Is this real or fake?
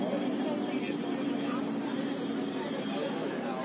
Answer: real